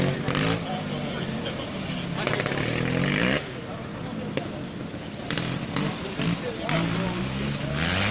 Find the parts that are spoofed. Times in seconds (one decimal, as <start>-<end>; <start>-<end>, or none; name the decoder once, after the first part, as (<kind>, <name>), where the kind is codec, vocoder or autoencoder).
none